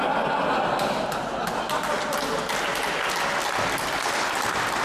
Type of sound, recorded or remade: recorded